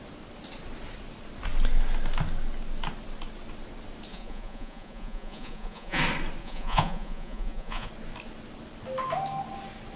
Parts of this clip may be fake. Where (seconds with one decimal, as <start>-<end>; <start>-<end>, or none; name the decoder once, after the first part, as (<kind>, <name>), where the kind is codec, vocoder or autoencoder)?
4.1-6.0 (vocoder, Vocos); 6.4-7.9